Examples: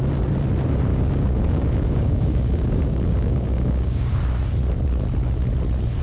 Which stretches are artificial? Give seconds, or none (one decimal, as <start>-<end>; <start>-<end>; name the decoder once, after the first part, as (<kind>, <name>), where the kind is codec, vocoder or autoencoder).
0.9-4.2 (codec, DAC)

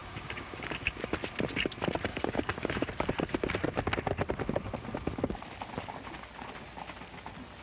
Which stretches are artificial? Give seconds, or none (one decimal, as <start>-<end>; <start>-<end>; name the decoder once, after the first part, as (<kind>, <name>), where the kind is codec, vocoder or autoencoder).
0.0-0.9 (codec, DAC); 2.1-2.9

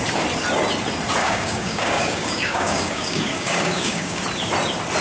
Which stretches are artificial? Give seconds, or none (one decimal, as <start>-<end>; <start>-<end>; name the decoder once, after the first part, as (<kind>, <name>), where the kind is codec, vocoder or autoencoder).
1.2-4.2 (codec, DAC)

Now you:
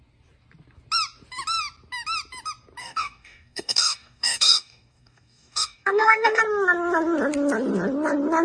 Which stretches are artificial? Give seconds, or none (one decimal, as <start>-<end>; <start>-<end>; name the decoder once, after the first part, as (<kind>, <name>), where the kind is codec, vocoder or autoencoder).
2.8-6.4 (codec, DAC)

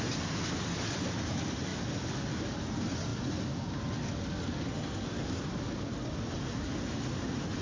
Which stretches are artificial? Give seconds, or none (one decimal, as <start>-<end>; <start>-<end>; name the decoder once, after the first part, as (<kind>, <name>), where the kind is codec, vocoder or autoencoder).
none

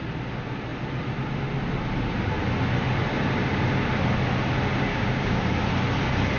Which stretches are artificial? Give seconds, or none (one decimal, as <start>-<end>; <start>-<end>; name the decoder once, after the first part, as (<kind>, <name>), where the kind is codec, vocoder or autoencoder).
4.9-5.4 (codec, DAC)